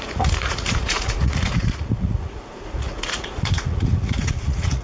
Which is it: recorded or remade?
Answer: remade